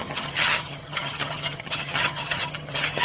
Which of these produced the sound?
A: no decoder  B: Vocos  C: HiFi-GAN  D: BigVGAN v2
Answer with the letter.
C